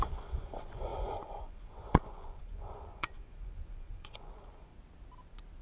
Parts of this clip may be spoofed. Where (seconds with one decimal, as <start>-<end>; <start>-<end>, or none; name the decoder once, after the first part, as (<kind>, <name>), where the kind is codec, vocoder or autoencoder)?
0.0-4.7 (vocoder, Vocos)